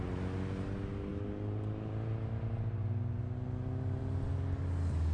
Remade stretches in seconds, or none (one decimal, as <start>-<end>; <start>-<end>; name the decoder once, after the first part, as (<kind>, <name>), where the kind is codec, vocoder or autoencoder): none